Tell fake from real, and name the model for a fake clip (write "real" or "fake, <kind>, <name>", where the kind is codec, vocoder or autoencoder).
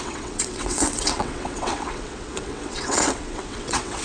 fake, vocoder, WaveNeXt